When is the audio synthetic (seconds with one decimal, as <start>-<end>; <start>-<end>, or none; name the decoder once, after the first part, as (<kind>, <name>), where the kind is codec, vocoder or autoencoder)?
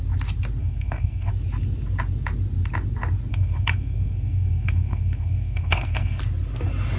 0.6-1.3 (codec, SNAC); 3.3-6.2